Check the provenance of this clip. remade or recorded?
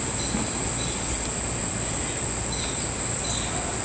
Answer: recorded